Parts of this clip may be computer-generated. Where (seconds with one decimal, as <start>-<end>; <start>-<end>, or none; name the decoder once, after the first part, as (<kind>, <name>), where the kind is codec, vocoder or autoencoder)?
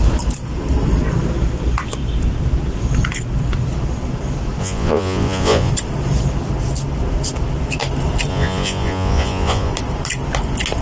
4.6-5.7 (vocoder, Vocos); 8.3-9.7